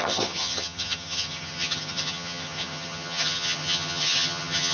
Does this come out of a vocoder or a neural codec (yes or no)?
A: yes